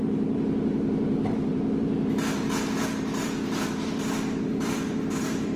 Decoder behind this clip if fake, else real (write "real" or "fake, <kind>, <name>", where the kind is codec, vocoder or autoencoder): fake, vocoder, BigVGAN v2